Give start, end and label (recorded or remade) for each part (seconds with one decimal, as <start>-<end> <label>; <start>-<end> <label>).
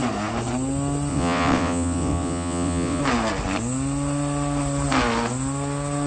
0.0-1.1 recorded; 1.1-3.0 remade; 3.0-6.1 recorded